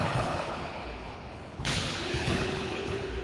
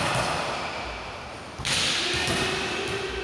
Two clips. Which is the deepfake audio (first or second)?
first